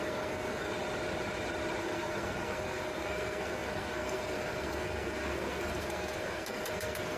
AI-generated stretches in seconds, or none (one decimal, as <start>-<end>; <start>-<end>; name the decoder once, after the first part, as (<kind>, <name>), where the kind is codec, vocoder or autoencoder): 0.0-0.7 (codec, SNAC); 1.8-7.2